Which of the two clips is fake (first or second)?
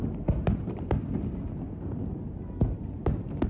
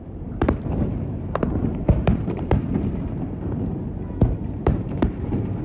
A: second